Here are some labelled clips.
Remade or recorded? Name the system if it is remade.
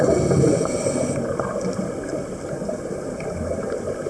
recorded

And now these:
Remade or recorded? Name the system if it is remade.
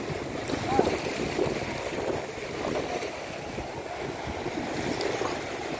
recorded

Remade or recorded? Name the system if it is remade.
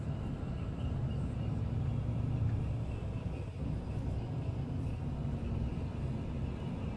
recorded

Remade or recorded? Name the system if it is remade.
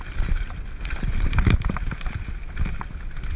recorded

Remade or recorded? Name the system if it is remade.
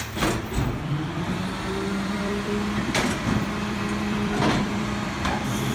remade, vocoder, BigVGAN v2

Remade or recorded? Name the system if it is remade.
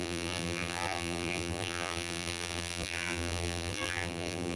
remade, vocoder, BigVGAN v2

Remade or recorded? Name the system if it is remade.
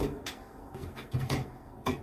remade, codec, SNAC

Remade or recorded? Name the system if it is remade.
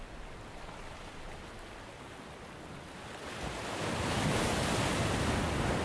recorded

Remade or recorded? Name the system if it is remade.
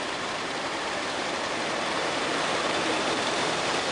remade, vocoder, BigVGAN v2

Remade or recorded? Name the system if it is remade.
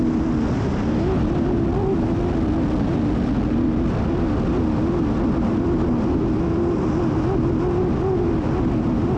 recorded